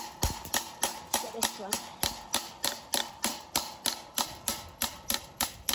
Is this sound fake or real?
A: fake